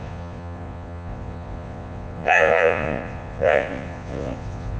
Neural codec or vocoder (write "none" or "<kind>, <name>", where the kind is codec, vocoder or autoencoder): vocoder, Vocos